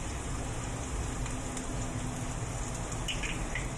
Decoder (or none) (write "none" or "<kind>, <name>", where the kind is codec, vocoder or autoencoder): none